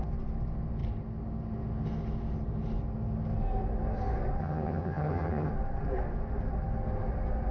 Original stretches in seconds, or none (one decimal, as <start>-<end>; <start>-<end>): 0.0-4.4; 5.5-7.5